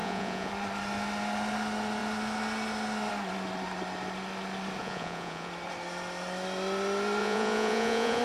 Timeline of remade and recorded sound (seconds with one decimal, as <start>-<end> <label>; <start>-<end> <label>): 0.0-0.5 remade; 0.5-4.8 recorded; 4.8-5.5 remade; 5.5-7.2 recorded; 7.2-8.2 remade